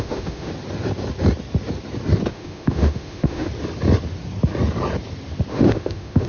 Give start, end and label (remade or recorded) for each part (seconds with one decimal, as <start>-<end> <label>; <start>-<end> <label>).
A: 0.0-0.5 remade; 0.5-2.3 recorded; 2.3-3.5 remade; 3.5-5.5 recorded; 5.5-6.3 remade